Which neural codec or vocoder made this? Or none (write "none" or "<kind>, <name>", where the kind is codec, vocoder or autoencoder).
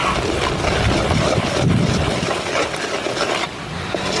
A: none